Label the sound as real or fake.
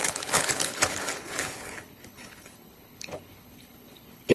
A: fake